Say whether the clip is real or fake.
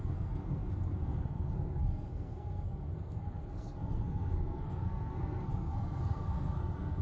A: fake